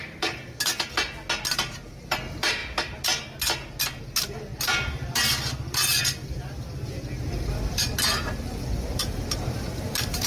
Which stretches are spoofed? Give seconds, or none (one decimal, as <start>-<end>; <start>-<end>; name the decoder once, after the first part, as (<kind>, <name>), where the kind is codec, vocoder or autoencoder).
0.0-0.7 (vocoder, BigVGAN v2); 1.5-2.6; 4.0-7.9; 8.6-10.3